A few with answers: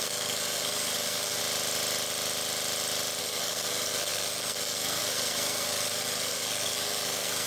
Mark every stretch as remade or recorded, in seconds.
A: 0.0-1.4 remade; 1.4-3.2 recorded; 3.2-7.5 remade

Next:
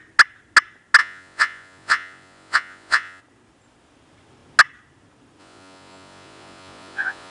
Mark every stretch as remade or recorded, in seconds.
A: 0.0-1.0 recorded; 1.0-3.2 remade; 3.2-5.4 recorded; 5.4-7.3 remade

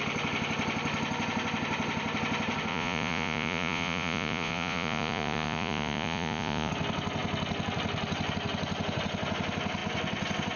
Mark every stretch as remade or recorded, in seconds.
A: 0.0-2.7 recorded; 2.7-6.7 remade; 6.7-10.6 recorded

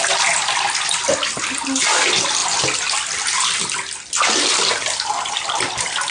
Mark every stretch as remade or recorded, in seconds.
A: 0.0-6.1 recorded

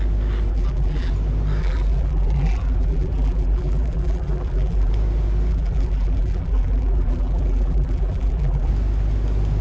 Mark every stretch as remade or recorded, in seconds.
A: 0.0-0.5 recorded; 0.5-1.1 remade; 1.1-1.6 recorded; 1.6-4.9 remade; 4.9-5.5 recorded; 5.5-8.7 remade; 8.7-9.6 recorded